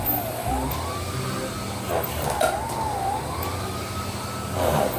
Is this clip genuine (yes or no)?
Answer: yes